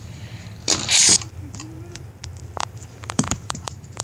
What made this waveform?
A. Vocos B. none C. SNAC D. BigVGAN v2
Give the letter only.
D